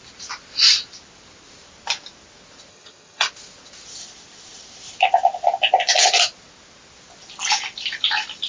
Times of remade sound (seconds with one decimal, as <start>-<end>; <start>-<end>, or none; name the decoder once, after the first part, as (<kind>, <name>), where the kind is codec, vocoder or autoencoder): 2.7-3.3 (vocoder, HiFi-GAN)